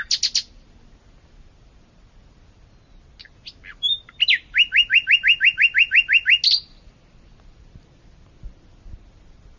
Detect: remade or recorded recorded